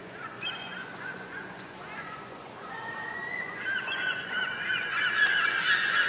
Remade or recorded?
remade